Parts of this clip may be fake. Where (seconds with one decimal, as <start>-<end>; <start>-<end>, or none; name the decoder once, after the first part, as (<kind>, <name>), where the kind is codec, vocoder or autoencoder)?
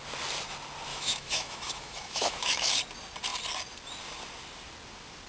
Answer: 0.9-2.8 (autoencoder, DAC-VAE)